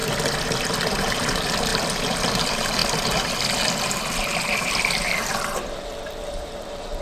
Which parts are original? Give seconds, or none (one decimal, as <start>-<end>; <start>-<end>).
0.0-1.0; 1.7-2.3; 2.8-5.2